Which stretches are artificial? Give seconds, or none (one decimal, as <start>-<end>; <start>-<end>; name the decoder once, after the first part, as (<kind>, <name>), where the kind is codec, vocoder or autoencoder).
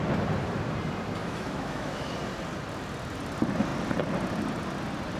1.2-2.1 (autoencoder, DAC-VAE)